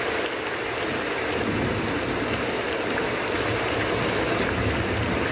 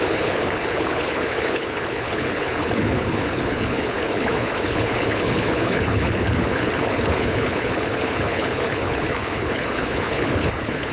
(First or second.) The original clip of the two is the first